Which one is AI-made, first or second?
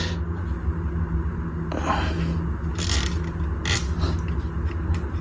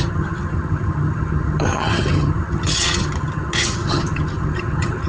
second